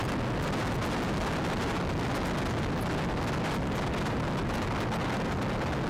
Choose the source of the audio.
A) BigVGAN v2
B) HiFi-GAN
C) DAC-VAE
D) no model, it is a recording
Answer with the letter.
D